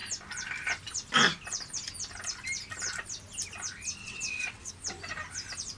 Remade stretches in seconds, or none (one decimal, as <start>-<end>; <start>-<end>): 4.0-4.7